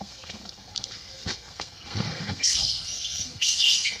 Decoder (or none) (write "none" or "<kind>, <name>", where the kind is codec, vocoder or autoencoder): codec, SNAC